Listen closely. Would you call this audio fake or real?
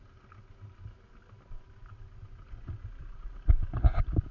real